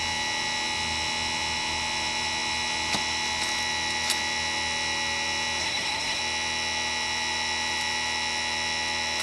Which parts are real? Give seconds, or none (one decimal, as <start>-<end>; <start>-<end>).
0.0-5.6; 6.2-9.2